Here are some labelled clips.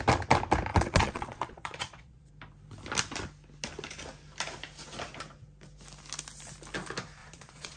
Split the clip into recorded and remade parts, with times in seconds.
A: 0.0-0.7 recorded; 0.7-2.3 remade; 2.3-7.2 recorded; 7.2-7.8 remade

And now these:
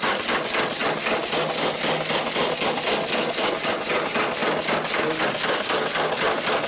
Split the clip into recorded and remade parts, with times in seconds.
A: 0.0-6.7 recorded

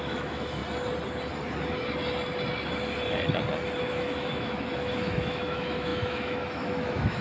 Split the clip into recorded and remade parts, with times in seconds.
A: 0.0-0.6 remade; 0.6-3.8 recorded; 3.8-7.2 remade

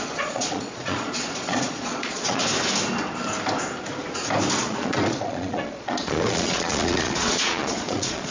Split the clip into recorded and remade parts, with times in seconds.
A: 0.0-2.4 remade; 2.4-4.6 recorded; 4.6-8.3 remade

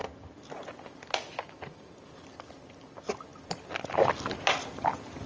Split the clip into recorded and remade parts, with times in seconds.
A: 0.0-5.3 recorded

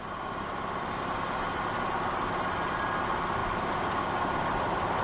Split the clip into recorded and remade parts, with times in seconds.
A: 0.0-5.0 recorded